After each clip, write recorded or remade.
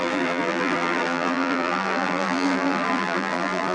remade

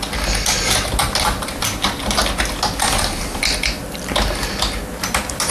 recorded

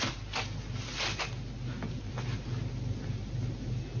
recorded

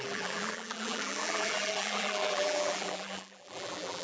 remade